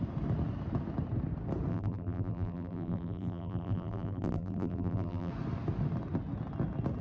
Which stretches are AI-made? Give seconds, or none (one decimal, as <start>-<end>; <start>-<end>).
1.7-5.3